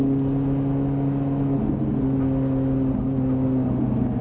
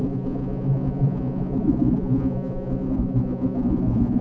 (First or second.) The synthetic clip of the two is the second